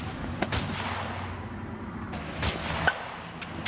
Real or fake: real